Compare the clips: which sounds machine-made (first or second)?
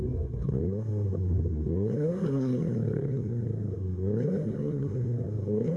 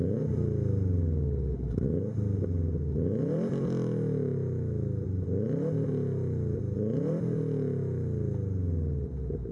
first